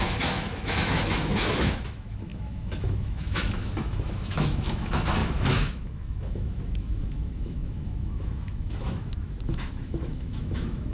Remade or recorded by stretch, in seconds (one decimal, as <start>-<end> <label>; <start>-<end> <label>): 0.0-10.9 remade